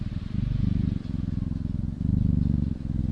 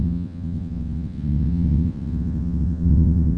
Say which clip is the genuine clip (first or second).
first